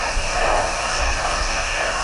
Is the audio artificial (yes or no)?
yes